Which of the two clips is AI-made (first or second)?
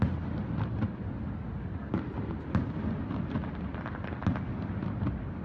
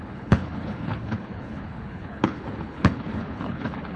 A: second